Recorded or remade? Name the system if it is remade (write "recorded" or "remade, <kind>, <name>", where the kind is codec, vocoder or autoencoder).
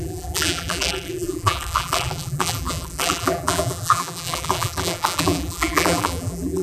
remade, vocoder, BigVGAN v2